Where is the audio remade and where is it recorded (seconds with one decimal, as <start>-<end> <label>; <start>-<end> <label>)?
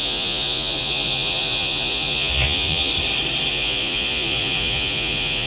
0.0-2.9 remade; 2.9-3.5 recorded; 3.5-5.5 remade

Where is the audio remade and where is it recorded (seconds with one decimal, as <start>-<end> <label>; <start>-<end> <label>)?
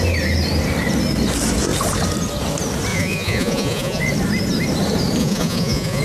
0.0-2.9 recorded; 2.9-4.0 remade; 4.0-5.2 recorded; 5.2-6.0 remade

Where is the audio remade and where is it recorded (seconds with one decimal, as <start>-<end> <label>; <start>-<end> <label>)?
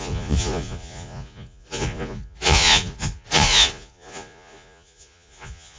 0.0-5.8 remade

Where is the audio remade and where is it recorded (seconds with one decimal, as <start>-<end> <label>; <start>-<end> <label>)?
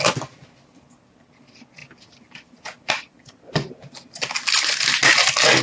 0.0-5.6 recorded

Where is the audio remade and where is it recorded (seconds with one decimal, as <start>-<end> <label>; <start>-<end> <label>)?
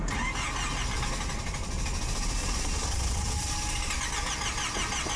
0.0-2.4 recorded; 2.4-3.5 remade; 3.5-5.2 recorded